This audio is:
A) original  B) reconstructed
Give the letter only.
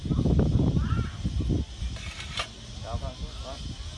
A